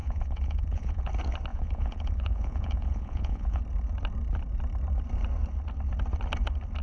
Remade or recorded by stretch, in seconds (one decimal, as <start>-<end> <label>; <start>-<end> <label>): 0.0-1.1 remade; 1.1-1.5 recorded; 1.5-3.6 remade; 3.6-6.8 recorded